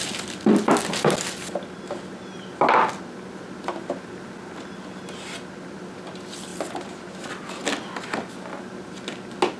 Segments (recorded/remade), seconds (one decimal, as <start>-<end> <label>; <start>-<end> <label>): 0.0-9.6 recorded